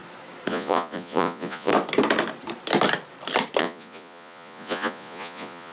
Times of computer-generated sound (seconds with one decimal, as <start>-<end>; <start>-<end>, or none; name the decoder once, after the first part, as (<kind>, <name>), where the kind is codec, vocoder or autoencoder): 0.5-1.7 (vocoder, Vocos); 3.6-5.7